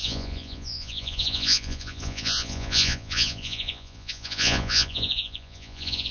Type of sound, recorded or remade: remade